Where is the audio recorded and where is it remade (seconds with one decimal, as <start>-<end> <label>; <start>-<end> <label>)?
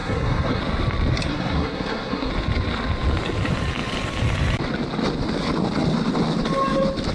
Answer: 0.0-0.6 remade; 0.6-1.3 recorded; 1.3-2.3 remade; 2.3-7.1 recorded